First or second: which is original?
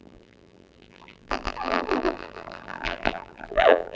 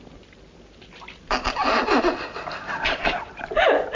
second